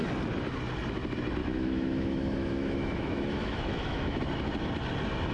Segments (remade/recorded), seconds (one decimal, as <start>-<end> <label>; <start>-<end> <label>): 0.0-1.4 recorded; 1.4-4.2 remade; 4.2-5.3 recorded